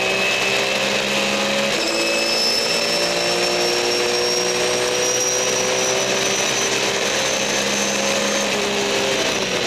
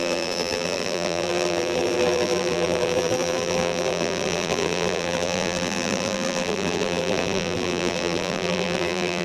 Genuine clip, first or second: first